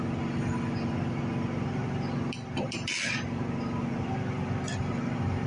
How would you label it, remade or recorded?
recorded